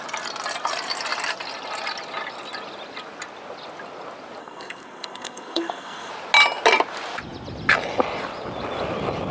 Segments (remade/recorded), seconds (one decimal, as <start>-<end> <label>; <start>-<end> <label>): 0.0-4.4 recorded; 4.4-6.1 remade; 6.1-9.3 recorded